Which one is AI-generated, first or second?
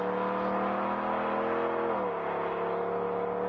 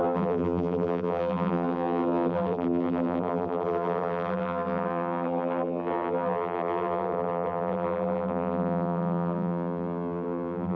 second